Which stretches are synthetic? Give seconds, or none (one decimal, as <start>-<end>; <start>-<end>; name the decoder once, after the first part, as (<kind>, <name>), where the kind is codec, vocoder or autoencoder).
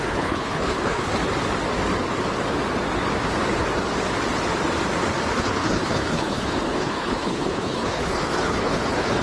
0.0-1.1 (codec, HILCodec); 5.3-9.2